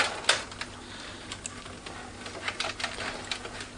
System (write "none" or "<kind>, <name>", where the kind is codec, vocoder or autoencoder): none